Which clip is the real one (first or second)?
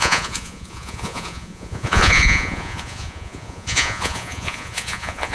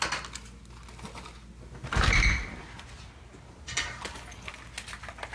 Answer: second